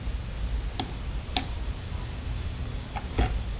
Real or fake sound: real